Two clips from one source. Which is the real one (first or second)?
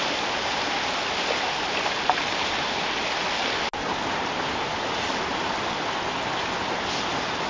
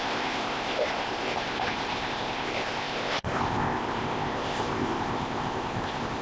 first